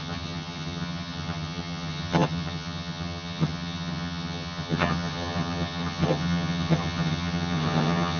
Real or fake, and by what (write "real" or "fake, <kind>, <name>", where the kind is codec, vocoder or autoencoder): fake, vocoder, HiFi-GAN